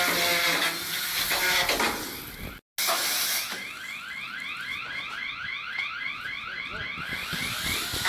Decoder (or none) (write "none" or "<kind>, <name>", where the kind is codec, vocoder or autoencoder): none